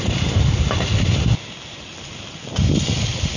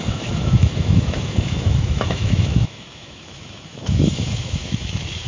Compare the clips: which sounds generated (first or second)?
second